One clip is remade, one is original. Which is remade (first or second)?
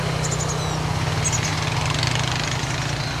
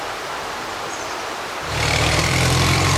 second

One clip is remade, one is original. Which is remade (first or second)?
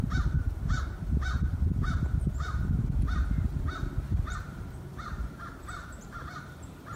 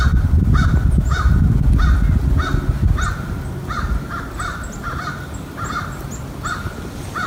first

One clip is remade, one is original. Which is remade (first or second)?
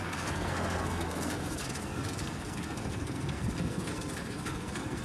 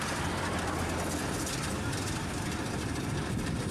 first